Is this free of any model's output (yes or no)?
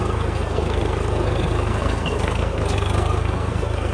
no